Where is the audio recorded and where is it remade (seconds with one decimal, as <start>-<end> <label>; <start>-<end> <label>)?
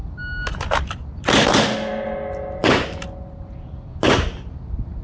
0.0-5.0 recorded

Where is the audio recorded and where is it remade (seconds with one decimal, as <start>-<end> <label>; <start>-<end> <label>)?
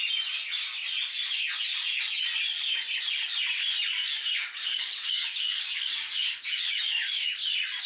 0.0-4.0 recorded; 4.0-7.4 remade; 7.4-7.9 recorded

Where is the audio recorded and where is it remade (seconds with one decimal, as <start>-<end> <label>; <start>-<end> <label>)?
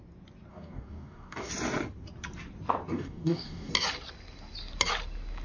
0.0-0.5 recorded; 0.5-1.5 remade; 1.5-2.9 recorded; 2.9-3.7 remade; 3.7-5.4 recorded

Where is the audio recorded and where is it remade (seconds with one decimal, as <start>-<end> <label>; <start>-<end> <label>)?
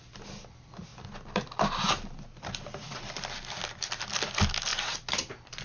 0.0-5.6 recorded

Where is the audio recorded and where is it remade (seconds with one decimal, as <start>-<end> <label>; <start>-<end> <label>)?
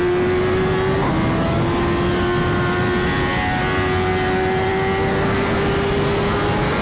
0.0-6.8 recorded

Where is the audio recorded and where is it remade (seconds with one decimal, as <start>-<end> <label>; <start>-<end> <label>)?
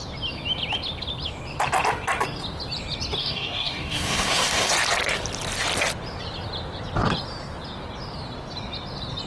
0.0-3.2 recorded; 3.2-4.7 remade; 4.7-9.3 recorded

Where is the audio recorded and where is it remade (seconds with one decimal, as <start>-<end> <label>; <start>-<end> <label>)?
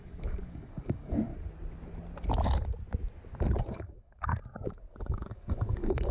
0.0-1.3 remade; 1.3-3.6 recorded; 3.6-4.3 remade; 4.3-5.0 recorded; 5.0-6.1 remade